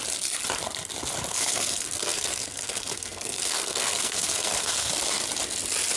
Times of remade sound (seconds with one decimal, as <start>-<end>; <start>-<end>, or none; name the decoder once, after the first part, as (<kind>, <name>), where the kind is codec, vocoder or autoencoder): 1.3-4.9 (codec, SNAC)